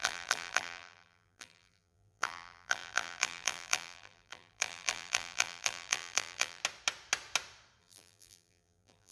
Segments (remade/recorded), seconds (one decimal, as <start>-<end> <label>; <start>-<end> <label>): 0.0-6.6 remade; 6.6-7.8 recorded; 7.8-9.1 remade